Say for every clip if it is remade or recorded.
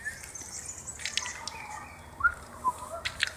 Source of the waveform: recorded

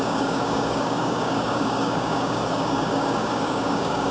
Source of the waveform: remade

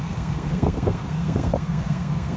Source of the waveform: remade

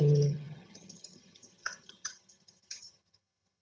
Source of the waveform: remade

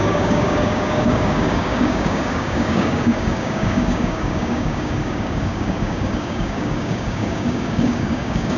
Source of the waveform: remade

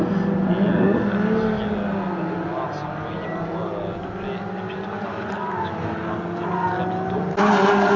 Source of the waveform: recorded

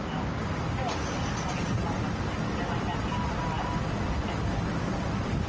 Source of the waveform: recorded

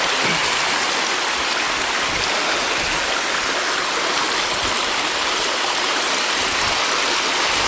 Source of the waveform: recorded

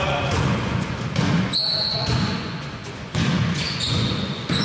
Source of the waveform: remade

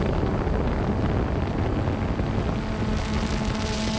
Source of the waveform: recorded